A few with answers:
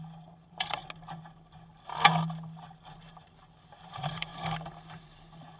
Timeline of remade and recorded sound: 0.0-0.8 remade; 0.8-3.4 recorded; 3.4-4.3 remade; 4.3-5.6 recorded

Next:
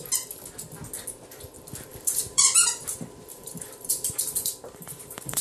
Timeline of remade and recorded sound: 0.0-1.9 recorded; 1.9-5.4 remade

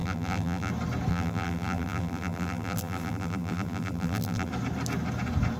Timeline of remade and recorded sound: 0.0-0.7 remade; 0.7-1.1 recorded; 1.1-4.5 remade; 4.5-5.6 recorded

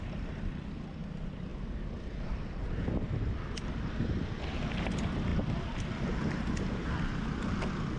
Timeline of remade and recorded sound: 0.0-1.5 remade; 1.5-3.8 recorded; 3.8-8.0 remade

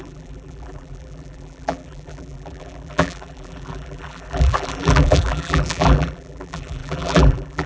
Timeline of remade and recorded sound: 0.0-7.7 remade